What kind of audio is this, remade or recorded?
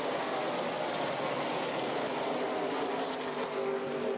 recorded